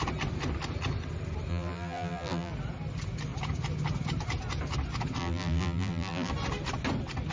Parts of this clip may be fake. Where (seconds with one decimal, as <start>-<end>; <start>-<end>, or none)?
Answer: 1.5-2.5; 5.2-6.3